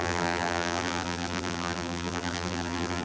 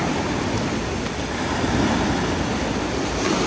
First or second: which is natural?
second